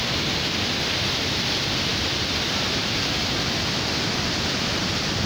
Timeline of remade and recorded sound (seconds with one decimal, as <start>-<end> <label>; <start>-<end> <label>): 0.0-5.3 recorded